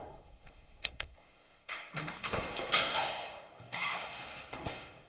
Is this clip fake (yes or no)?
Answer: yes